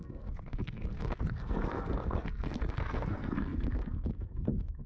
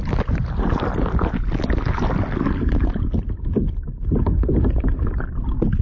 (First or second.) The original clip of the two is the second